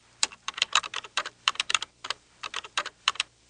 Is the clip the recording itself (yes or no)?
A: no